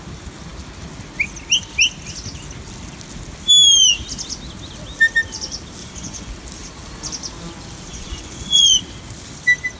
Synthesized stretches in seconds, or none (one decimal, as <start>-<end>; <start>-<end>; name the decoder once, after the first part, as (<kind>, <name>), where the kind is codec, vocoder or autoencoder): 5.8-6.3 (vocoder, Vocos); 7.9-8.8